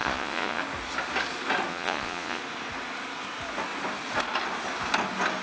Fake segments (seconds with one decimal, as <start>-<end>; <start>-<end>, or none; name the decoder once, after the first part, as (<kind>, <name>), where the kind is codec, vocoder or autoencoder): 0.0-0.6 (vocoder, Vocos); 1.7-2.4